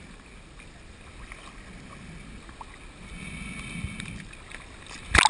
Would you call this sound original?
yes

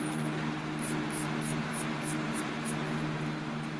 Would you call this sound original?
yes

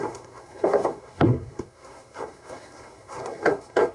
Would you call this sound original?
no